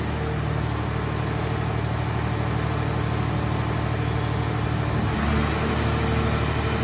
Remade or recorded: recorded